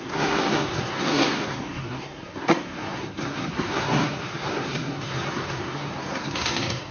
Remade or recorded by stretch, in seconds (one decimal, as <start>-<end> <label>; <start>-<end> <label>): 0.0-6.9 remade